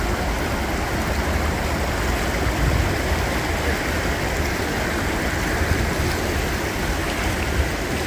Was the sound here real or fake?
real